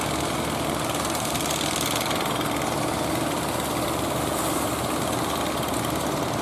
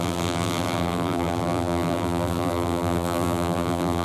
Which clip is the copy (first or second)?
second